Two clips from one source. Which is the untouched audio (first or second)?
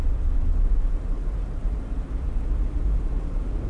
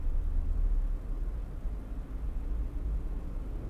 second